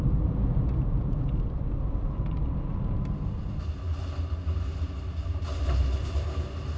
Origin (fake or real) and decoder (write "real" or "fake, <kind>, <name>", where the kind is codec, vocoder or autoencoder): real